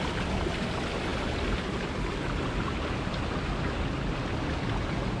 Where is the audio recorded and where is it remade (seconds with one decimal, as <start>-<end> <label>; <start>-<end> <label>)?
0.0-5.2 recorded